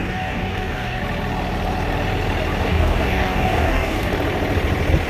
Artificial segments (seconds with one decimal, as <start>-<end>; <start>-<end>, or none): 0.0-1.0; 2.6-4.1